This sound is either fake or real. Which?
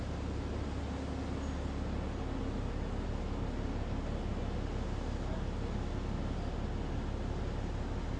real